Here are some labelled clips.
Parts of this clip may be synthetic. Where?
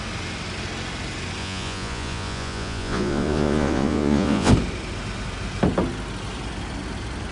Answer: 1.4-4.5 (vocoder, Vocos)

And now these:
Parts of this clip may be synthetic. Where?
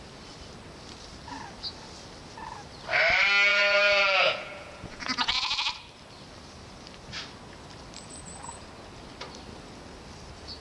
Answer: 3.5-5.3 (vocoder, Vocos)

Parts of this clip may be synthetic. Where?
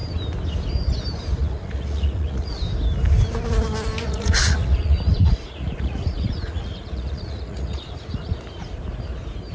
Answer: 1.4-2.6 (vocoder, Vocos); 4.0-8.4